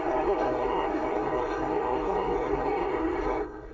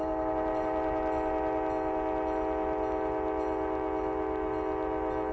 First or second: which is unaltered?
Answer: second